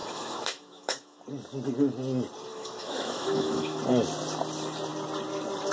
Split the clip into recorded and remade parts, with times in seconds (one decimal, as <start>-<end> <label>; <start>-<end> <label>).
0.0-1.2 remade; 1.2-2.5 recorded; 2.5-3.8 remade; 3.8-5.7 recorded